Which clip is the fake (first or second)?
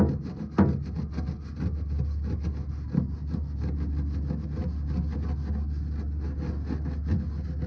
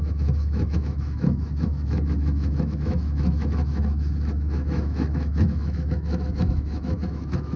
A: second